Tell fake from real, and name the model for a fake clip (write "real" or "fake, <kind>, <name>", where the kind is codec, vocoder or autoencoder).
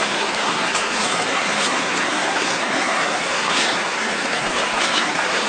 fake, codec, SNAC